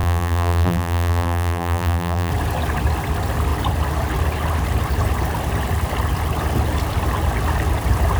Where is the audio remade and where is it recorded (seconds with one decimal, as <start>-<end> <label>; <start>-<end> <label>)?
0.0-2.3 remade; 2.3-8.2 recorded

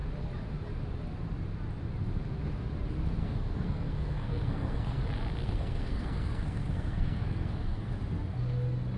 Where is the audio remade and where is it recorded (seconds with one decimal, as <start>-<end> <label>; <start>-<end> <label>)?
0.0-3.2 recorded; 3.2-5.0 remade; 5.0-5.4 recorded; 5.4-7.9 remade; 7.9-9.0 recorded

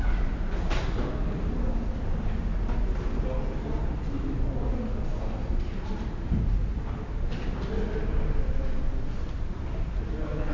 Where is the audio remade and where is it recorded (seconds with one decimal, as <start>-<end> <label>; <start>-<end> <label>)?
0.0-10.5 recorded

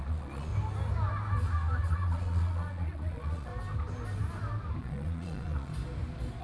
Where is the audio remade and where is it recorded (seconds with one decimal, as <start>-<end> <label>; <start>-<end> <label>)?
0.0-0.5 remade; 0.5-1.9 recorded; 1.9-3.5 remade; 3.5-4.8 recorded; 4.8-5.7 remade; 5.7-6.4 recorded

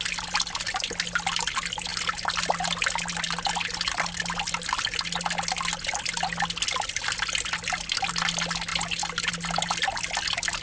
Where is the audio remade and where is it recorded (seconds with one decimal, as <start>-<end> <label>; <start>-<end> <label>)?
0.0-10.6 recorded